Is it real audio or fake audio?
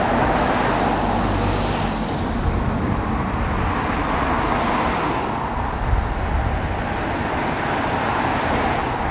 real